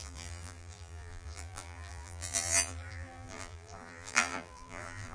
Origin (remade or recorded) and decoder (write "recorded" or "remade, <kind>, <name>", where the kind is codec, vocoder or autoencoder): remade, vocoder, BigVGAN v2